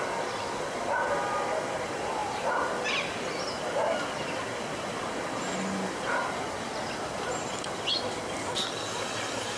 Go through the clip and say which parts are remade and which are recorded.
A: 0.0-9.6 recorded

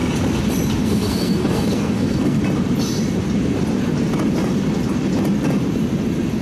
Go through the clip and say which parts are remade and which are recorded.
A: 0.0-0.8 recorded; 0.8-2.4 remade; 2.4-6.4 recorded

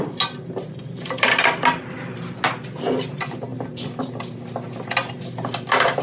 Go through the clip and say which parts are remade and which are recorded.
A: 0.0-6.0 recorded

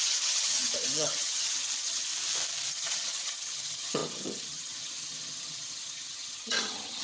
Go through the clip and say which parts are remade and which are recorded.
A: 0.0-2.1 remade; 2.1-2.7 recorded; 2.7-7.0 remade

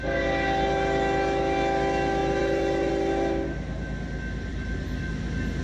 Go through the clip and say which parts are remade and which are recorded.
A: 0.0-2.2 recorded; 2.2-2.9 remade; 2.9-4.5 recorded; 4.5-5.1 remade; 5.1-5.6 recorded

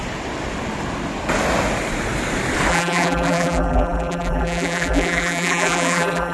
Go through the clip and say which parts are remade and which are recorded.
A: 0.0-2.7 recorded; 2.7-6.3 remade

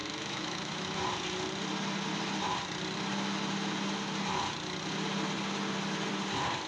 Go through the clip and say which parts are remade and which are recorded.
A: 0.0-1.0 remade; 1.0-6.7 recorded